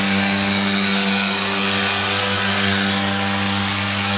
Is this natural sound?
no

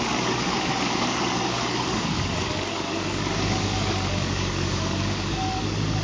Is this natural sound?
no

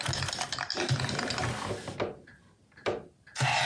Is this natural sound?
yes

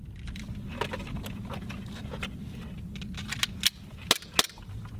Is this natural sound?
yes